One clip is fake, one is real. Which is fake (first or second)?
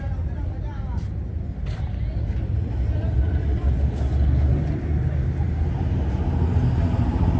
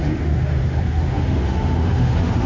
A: second